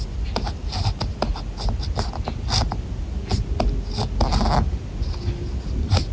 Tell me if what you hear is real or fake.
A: real